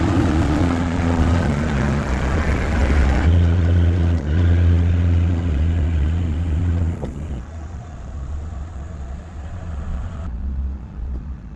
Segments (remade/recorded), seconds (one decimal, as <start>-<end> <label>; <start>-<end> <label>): 0.0-11.6 remade